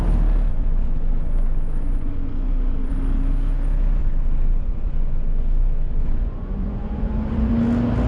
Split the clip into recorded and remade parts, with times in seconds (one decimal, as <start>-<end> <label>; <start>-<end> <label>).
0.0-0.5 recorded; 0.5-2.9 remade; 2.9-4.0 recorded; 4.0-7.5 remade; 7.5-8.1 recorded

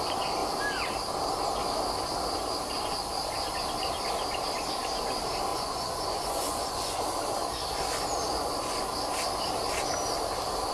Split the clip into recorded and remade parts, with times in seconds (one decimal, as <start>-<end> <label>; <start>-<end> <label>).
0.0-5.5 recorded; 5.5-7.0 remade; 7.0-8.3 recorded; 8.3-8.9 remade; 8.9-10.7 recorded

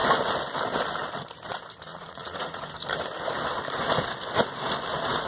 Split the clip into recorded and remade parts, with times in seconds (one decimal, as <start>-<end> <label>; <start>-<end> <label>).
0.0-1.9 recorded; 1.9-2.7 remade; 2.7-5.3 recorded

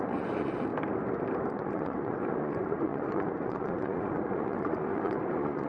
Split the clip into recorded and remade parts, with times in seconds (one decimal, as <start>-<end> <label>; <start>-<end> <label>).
0.0-0.7 remade; 0.7-1.5 recorded; 1.5-5.7 remade

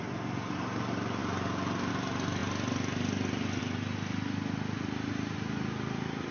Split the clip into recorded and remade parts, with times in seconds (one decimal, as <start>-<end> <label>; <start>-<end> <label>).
0.0-6.3 recorded

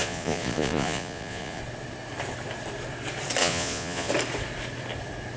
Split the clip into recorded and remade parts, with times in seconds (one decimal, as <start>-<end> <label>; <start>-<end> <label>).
0.0-1.6 remade; 1.6-3.4 recorded; 3.4-4.1 remade; 4.1-5.4 recorded

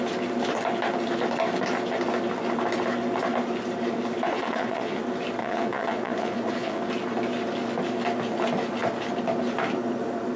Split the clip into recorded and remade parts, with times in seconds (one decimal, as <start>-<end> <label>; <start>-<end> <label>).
0.0-4.3 recorded; 4.3-5.0 remade; 5.0-5.4 recorded; 5.4-6.8 remade; 6.8-10.4 recorded